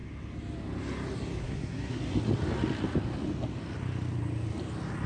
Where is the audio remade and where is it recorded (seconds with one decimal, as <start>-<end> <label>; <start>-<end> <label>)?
0.0-1.4 recorded; 1.4-2.0 remade; 2.0-5.1 recorded